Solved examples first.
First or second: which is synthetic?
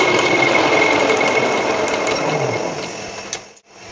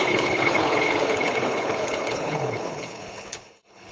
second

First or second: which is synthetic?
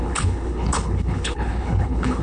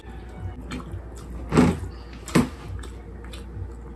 first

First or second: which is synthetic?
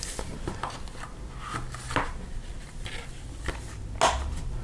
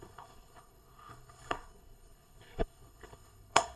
second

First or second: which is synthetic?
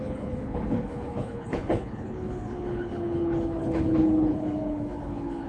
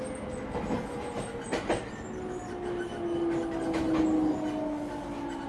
first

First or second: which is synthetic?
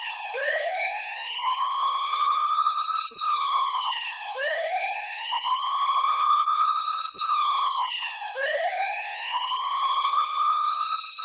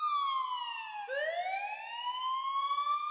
first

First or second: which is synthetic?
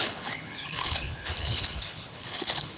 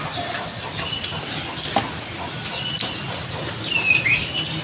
first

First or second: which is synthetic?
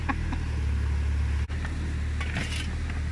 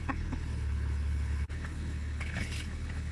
second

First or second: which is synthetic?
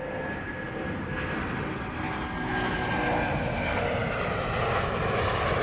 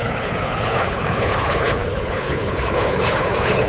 second